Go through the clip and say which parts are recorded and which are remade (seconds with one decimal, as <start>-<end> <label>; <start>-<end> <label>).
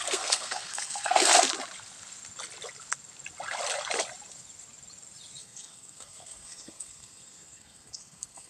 0.0-1.3 remade; 1.3-5.4 recorded; 5.4-8.5 remade